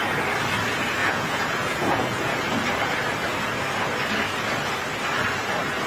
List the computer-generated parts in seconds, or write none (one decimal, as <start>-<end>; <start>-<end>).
1.0-2.4